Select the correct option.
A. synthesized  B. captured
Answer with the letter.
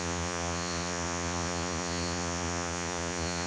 A